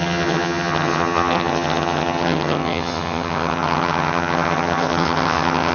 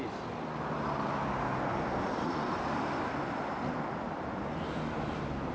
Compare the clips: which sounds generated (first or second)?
first